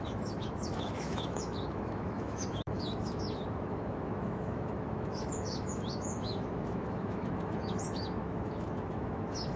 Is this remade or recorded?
remade